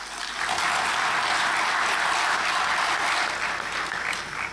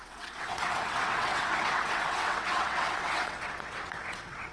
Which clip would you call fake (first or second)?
second